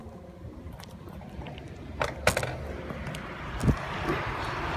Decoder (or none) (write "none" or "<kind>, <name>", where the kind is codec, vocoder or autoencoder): none